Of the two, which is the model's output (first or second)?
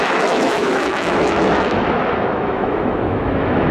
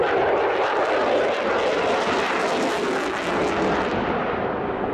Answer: first